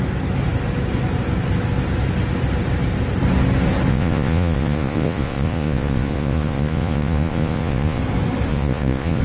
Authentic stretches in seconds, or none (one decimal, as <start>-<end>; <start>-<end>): 0.0-3.9; 8.0-8.5